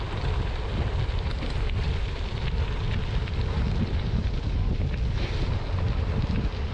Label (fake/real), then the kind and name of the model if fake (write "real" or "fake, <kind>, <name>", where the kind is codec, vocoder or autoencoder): real